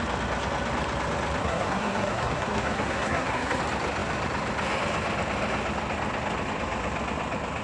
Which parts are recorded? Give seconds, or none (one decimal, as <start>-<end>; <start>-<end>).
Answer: 0.0-1.4; 3.6-7.6